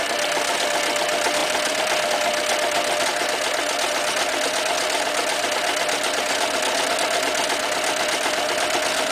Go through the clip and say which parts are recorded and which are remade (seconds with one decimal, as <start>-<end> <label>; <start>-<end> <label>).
0.0-9.1 recorded